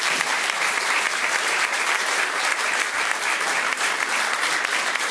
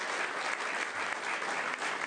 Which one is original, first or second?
second